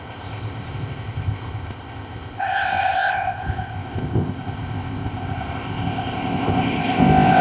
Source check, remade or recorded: remade